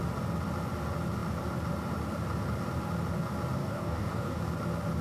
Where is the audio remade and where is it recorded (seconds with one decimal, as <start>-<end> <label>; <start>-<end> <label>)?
0.0-3.6 recorded; 3.6-4.4 remade; 4.4-5.0 recorded